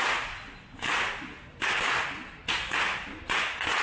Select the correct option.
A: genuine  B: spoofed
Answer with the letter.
A